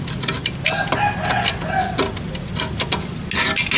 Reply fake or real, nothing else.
real